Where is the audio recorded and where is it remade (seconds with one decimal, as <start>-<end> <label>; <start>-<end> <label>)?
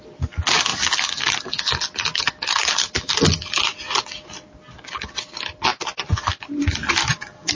0.0-5.7 recorded; 5.7-6.6 remade; 6.6-7.5 recorded